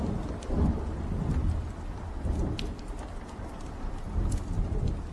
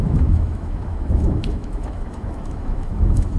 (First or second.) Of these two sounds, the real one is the first